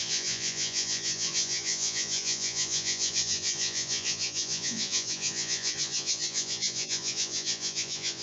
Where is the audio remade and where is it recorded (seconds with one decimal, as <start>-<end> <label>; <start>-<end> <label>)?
0.0-8.2 remade